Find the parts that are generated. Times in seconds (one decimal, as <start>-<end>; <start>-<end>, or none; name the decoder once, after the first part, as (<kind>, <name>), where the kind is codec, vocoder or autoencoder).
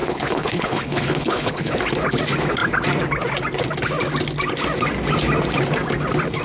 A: 0.0-1.8 (codec, HILCodec)